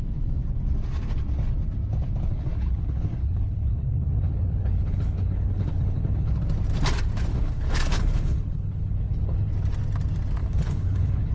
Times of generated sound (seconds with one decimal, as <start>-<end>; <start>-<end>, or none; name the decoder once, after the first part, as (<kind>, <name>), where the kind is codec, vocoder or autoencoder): 2.3-6.3 (codec, HILCodec); 7.3-9.5; 10.4-11.3